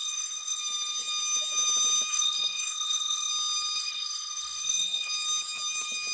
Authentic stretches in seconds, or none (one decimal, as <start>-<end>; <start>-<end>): 0.6-2.1; 3.3-3.8; 5.1-6.1